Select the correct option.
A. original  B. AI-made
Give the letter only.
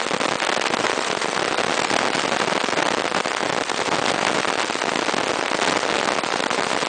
A